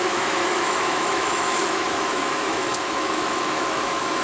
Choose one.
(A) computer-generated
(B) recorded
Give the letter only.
A